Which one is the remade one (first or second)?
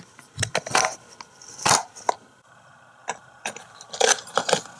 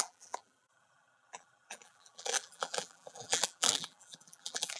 second